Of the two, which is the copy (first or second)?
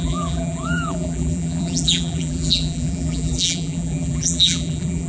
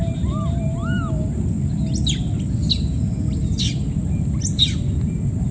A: first